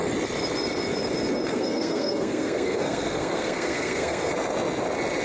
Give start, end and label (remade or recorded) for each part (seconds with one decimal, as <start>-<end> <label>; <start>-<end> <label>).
0.0-1.5 recorded; 1.5-4.3 remade; 4.3-5.2 recorded